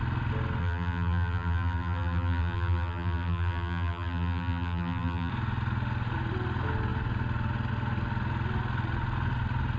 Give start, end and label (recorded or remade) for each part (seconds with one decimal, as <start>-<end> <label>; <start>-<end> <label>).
0.0-0.6 recorded; 0.6-5.3 remade; 5.3-9.8 recorded